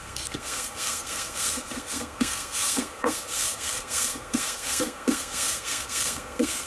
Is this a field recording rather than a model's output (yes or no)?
no